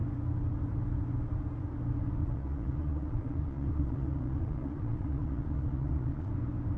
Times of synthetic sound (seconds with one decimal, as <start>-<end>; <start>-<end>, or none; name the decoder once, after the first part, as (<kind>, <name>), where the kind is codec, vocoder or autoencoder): 2.2-6.3 (vocoder, Vocos)